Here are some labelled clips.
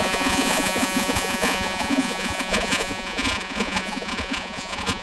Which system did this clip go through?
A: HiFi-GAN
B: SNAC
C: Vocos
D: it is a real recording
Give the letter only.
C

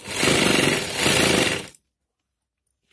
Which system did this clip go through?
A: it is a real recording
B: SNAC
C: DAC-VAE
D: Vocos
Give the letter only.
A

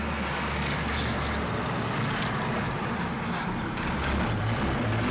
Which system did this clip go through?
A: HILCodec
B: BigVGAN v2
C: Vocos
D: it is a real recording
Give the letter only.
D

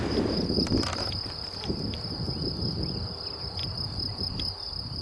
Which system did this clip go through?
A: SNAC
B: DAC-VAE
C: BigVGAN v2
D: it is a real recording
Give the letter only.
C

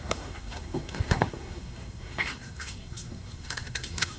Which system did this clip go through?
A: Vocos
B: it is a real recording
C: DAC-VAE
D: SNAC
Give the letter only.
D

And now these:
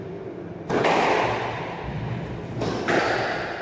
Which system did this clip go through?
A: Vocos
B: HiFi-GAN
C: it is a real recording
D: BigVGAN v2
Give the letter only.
C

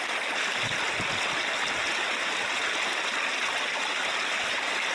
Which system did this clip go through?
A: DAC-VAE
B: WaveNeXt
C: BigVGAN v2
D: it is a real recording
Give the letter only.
D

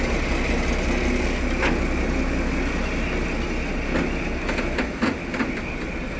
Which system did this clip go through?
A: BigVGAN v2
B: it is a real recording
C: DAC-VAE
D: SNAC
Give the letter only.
B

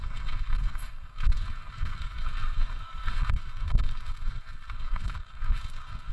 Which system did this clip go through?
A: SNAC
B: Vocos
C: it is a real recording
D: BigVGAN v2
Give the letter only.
A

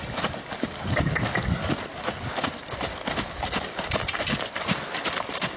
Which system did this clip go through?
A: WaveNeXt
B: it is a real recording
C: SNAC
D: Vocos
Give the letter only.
B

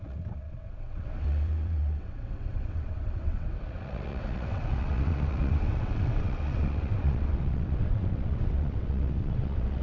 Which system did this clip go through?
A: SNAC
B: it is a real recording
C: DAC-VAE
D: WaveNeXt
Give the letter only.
D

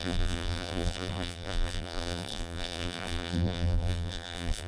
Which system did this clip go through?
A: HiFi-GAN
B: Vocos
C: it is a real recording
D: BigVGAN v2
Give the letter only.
D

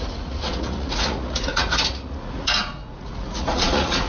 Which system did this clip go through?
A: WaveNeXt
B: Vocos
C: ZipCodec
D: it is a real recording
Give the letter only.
B